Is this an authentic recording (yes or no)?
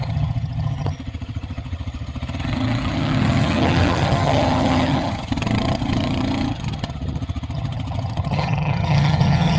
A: no